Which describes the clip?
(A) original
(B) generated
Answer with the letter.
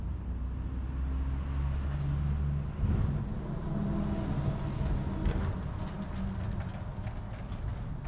A